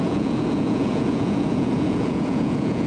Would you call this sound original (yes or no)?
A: no